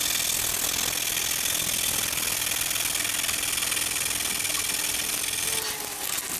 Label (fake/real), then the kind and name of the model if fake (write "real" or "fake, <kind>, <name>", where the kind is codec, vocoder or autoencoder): real